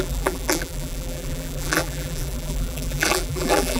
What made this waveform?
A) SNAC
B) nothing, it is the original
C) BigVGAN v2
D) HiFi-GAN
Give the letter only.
C